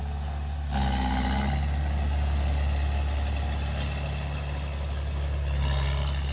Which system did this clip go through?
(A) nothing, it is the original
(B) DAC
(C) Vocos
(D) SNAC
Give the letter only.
A